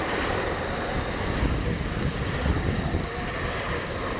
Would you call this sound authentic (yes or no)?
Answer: yes